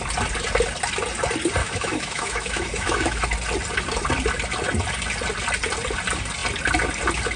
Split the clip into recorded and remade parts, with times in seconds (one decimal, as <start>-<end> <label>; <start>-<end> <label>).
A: 0.0-1.6 recorded; 1.6-3.2 remade; 3.2-7.4 recorded